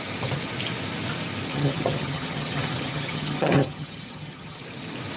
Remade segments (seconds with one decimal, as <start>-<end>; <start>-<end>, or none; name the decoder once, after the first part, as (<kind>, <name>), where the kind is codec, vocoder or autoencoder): 1.5-4.6 (vocoder, HiFi-GAN)